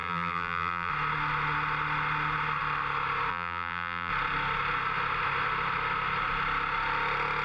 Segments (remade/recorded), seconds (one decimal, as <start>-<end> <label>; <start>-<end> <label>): 0.0-0.9 remade; 0.9-3.3 recorded; 3.3-4.1 remade; 4.1-7.4 recorded